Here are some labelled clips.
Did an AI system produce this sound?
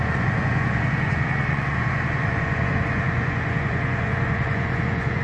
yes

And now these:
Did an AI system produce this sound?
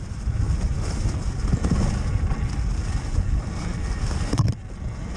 no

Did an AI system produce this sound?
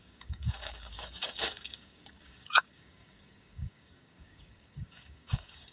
yes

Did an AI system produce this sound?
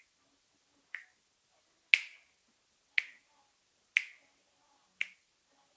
no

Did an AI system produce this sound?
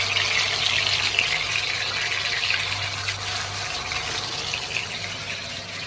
no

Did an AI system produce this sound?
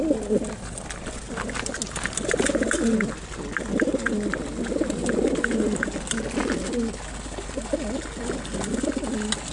no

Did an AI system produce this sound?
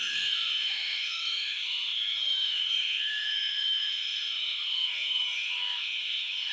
yes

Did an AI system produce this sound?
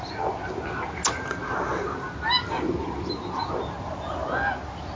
no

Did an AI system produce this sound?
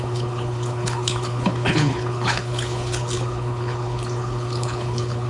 yes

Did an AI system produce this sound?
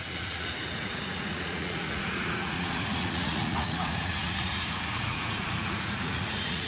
yes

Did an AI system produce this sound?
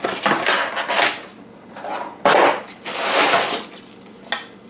no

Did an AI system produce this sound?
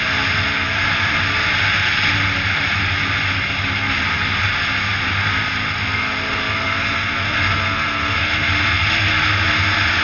no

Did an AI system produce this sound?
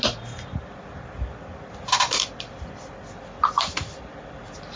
no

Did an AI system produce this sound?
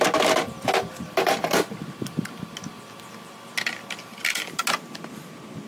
no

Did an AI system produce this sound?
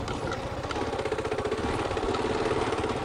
no